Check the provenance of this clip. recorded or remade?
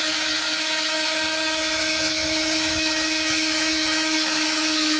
remade